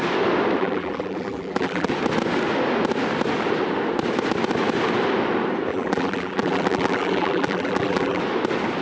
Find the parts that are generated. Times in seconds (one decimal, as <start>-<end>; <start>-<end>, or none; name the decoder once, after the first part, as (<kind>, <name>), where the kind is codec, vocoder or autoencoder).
0.6-1.9 (vocoder, BigVGAN v2); 5.7-8.2

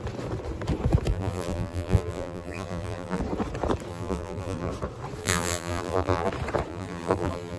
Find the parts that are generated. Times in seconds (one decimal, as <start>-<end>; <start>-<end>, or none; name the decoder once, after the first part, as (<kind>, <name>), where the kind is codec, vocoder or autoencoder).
1.1-3.2 (vocoder, BigVGAN v2); 3.9-4.7; 5.2-6.3; 6.7-7.6

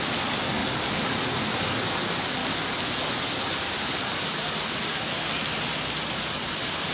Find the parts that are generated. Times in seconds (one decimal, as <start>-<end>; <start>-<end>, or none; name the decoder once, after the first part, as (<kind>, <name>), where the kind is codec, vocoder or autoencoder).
none

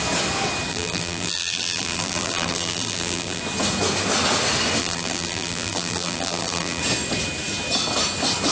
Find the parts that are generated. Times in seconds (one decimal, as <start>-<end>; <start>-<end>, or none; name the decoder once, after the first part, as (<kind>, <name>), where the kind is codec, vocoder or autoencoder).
0.7-3.4 (vocoder, BigVGAN v2); 4.8-6.8

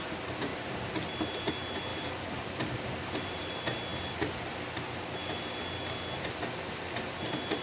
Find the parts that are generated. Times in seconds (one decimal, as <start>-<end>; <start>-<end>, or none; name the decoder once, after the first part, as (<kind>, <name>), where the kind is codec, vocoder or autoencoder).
1.9-3.5 (vocoder, BigVGAN v2)

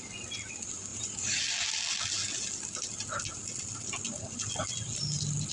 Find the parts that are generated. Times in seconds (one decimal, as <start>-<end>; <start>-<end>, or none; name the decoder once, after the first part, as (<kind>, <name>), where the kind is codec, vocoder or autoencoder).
0.9-1.4 (vocoder, BigVGAN v2)